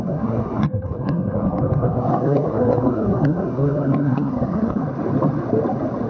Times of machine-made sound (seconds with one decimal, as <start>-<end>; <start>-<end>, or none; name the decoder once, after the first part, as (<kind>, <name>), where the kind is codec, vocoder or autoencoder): 0.0-4.8 (codec, SNAC)